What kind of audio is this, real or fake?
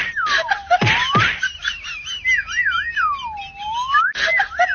real